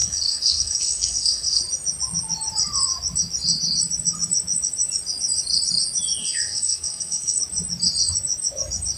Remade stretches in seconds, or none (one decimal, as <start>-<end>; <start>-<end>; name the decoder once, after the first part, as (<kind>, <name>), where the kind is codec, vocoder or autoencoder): 0.0-1.6 (codec, SNAC); 6.2-7.4